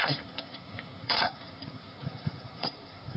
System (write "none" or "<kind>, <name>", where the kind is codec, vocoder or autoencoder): codec, SNAC